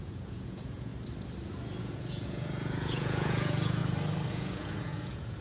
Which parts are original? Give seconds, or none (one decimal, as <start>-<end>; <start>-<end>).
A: 0.9-1.8; 3.8-4.3